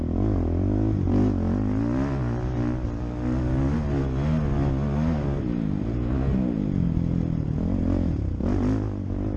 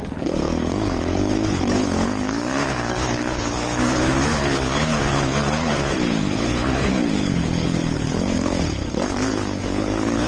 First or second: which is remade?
second